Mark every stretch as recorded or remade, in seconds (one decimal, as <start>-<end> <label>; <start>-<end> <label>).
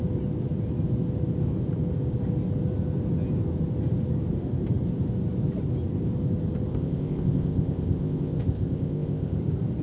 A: 0.0-6.7 recorded; 6.7-9.4 remade; 9.4-9.8 recorded